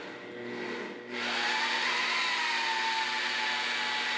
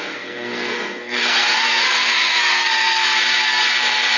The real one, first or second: first